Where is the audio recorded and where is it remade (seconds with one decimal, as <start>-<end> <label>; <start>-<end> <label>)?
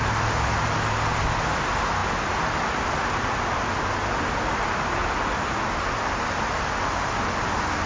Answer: 0.0-7.9 recorded